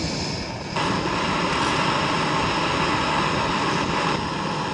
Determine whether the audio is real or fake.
real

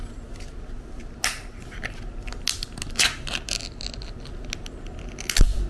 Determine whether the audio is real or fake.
real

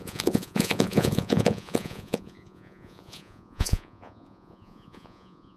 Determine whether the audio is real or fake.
fake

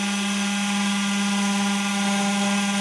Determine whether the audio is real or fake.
real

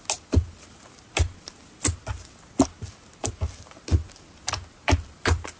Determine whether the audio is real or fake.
real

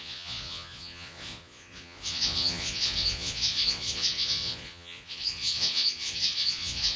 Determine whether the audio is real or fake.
fake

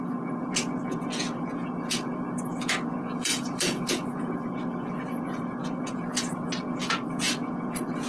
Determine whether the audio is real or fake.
fake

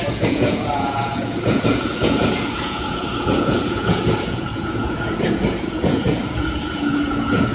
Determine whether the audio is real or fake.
fake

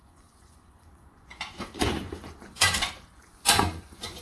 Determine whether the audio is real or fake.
fake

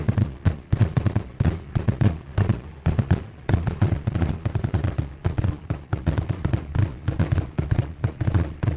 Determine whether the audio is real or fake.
fake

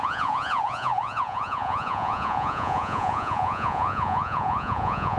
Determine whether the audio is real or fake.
fake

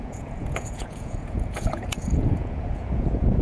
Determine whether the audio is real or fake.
fake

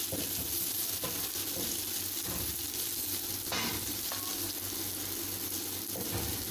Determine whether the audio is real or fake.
real